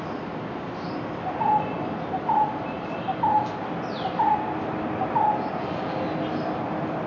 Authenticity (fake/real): real